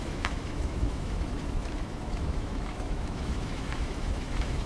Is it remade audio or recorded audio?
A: remade